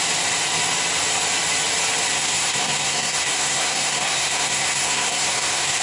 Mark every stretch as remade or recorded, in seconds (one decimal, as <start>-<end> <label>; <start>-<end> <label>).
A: 0.0-2.1 recorded; 2.1-5.8 remade